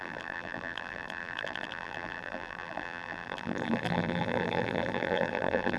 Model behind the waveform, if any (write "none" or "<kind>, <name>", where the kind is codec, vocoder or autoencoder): vocoder, BigVGAN v2